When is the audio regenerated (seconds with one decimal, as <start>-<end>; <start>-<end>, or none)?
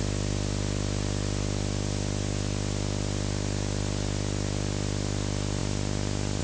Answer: none